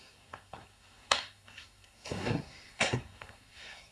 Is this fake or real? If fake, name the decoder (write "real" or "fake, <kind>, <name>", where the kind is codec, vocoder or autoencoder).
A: fake, codec, SNAC